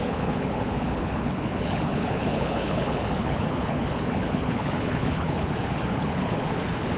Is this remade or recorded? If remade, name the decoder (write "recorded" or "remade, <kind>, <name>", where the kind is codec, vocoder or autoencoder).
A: remade, codec, HILCodec